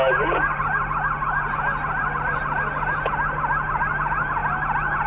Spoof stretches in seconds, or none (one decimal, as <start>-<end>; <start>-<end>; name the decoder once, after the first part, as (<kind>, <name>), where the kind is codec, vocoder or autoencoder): none